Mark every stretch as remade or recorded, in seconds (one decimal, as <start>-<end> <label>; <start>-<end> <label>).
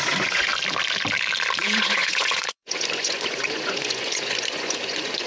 0.0-0.5 remade; 0.5-1.6 recorded; 1.6-5.3 remade